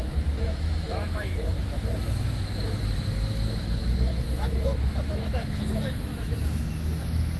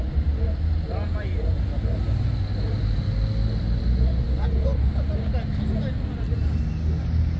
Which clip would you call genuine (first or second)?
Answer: second